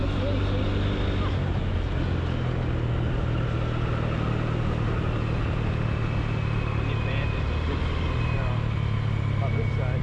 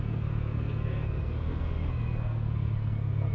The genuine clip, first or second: first